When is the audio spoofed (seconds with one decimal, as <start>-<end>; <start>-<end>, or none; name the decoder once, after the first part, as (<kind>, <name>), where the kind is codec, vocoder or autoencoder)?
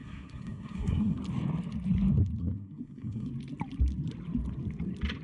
0.0-1.2 (codec, SNAC); 2.4-3.3